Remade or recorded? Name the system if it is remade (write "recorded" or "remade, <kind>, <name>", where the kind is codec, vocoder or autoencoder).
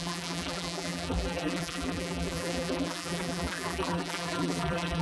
remade, vocoder, BigVGAN v2